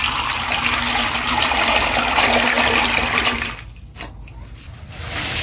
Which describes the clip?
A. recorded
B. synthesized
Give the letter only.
A